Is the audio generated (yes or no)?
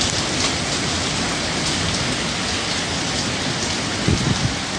no